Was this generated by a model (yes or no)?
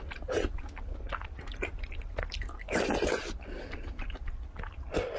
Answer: no